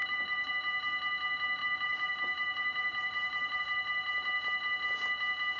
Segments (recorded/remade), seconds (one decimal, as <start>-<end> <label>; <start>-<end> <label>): 0.0-0.5 remade; 0.5-1.6 recorded; 1.6-3.6 remade; 3.6-5.6 recorded